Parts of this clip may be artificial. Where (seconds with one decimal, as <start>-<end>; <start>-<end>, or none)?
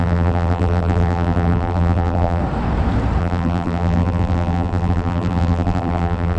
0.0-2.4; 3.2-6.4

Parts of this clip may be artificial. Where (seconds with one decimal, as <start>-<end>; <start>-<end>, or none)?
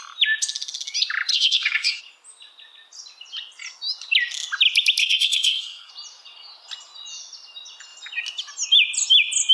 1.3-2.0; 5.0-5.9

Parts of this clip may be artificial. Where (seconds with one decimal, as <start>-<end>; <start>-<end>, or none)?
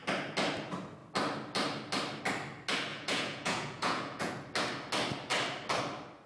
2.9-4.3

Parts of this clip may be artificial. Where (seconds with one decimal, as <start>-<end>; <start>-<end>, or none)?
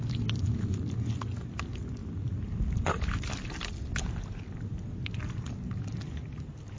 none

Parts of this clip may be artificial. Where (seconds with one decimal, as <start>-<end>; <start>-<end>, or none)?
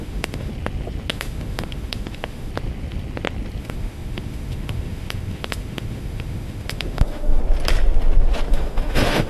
0.0-0.5; 1.1-2.5; 3.6-7.4; 8.5-9.3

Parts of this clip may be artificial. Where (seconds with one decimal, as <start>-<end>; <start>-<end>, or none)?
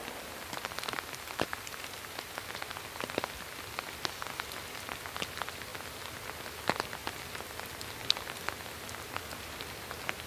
none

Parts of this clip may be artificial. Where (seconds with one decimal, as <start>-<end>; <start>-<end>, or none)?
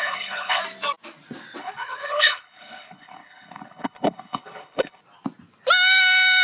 0.0-0.6; 1.6-5.0